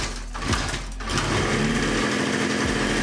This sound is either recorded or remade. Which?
recorded